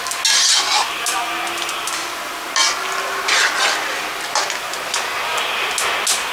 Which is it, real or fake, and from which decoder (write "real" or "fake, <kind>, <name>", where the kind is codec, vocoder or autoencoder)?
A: real